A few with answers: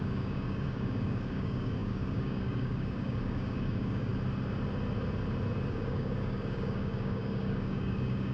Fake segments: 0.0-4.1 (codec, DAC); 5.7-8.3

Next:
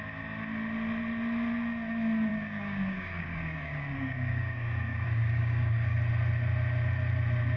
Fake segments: 2.3-6.0 (codec, DAC)